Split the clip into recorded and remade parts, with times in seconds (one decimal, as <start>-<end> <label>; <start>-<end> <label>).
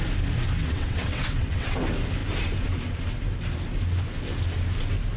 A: 0.0-0.6 recorded; 0.6-1.8 remade; 1.8-5.2 recorded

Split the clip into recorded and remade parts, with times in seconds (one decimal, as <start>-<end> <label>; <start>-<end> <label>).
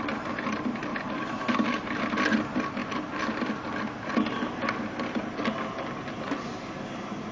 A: 0.0-7.3 recorded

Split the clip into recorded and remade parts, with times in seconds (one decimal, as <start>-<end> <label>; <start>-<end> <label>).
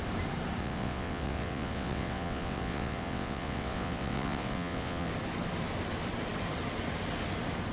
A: 0.0-0.6 recorded; 0.6-5.1 remade; 5.1-7.7 recorded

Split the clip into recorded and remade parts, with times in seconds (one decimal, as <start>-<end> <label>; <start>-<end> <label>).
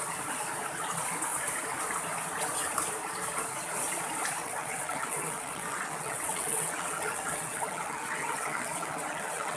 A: 0.0-4.4 recorded; 4.4-9.6 remade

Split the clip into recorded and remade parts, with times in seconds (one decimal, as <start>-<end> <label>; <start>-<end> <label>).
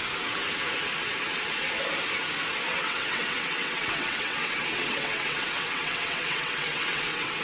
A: 0.0-2.7 recorded; 2.7-7.4 remade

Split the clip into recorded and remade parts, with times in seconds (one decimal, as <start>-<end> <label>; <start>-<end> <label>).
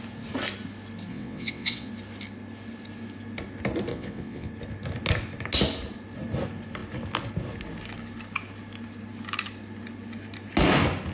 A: 0.0-1.1 recorded; 1.1-1.9 remade; 1.9-3.9 recorded; 3.9-4.5 remade; 4.5-11.1 recorded